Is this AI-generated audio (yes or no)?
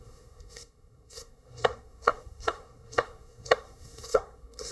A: yes